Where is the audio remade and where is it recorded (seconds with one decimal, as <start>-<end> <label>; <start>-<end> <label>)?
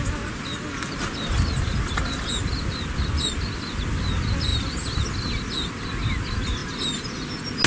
0.0-7.7 recorded